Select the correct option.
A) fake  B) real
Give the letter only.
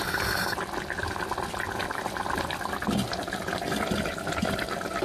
B